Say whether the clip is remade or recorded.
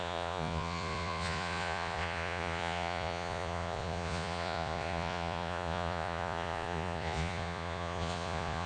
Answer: remade